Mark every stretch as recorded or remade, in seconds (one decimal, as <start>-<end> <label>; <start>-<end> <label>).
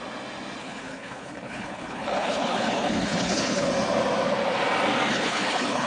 0.0-0.6 recorded; 0.6-3.7 remade; 3.7-5.1 recorded; 5.1-5.9 remade